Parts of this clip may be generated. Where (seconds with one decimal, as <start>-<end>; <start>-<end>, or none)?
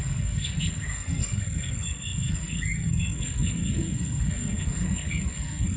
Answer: 0.0-5.8